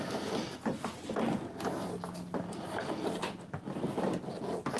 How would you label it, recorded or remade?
recorded